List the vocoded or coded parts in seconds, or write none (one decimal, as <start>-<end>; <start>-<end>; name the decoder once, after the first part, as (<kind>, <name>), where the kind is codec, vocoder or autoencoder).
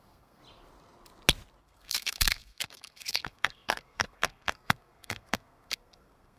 0.0-0.4 (codec, SNAC); 1.6-6.4